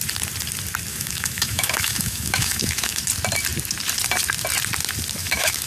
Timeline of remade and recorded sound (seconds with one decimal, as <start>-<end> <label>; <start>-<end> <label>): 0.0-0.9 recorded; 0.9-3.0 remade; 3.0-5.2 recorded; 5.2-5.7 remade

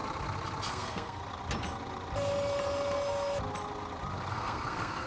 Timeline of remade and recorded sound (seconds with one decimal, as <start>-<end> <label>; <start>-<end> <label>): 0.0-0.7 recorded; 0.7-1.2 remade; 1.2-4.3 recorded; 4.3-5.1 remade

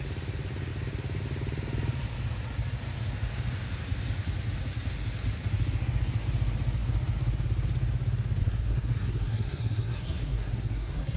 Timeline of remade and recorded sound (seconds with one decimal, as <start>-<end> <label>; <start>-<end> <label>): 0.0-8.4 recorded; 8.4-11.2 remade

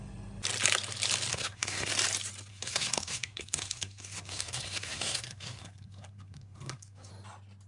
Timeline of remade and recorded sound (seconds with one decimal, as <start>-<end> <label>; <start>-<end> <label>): 0.0-1.3 recorded; 1.3-1.9 remade; 1.9-2.5 recorded; 2.5-7.1 remade; 7.1-7.7 recorded

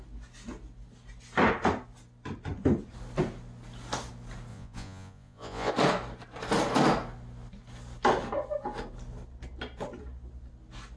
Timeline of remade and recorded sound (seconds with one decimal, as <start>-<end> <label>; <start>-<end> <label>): 0.0-4.5 recorded; 4.5-5.7 remade; 5.7-11.0 recorded

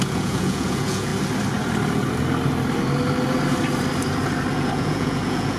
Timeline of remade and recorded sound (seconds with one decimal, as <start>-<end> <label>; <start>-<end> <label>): 0.0-1.1 remade; 1.1-4.5 recorded; 4.5-5.6 remade

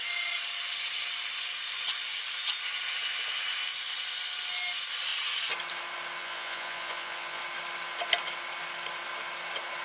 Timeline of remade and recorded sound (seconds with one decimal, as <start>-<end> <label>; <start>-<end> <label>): 0.0-6.2 recorded; 6.2-7.4 remade; 7.4-9.8 recorded